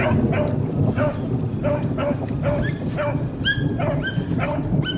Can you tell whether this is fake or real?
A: real